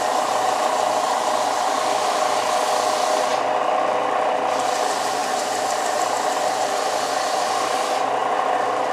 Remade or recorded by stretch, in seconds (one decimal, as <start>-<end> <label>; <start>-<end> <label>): 0.0-5.2 recorded; 5.2-6.6 remade; 6.6-8.2 recorded; 8.2-8.9 remade